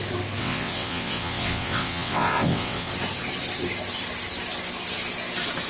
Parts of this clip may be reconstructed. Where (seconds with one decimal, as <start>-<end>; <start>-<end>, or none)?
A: 0.4-2.9